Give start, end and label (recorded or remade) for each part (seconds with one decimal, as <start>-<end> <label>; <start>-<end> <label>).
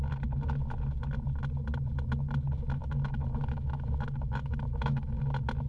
0.0-2.8 recorded; 2.8-5.2 remade; 5.2-5.7 recorded